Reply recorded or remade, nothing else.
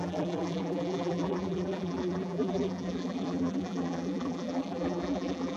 remade